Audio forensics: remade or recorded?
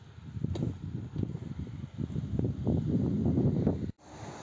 recorded